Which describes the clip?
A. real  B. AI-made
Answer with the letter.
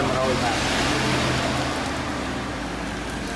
A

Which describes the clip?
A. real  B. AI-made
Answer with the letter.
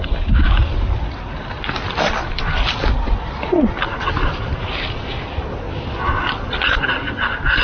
A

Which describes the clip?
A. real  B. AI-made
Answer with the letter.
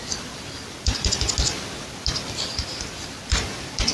A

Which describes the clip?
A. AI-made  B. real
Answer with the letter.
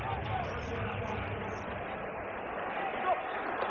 B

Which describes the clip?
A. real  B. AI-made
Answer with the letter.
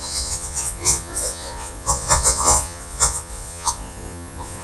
B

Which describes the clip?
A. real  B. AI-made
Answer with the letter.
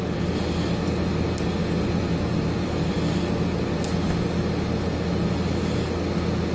A